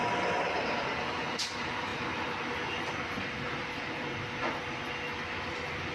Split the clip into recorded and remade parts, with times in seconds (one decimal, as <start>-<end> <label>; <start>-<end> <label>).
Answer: 0.0-5.9 recorded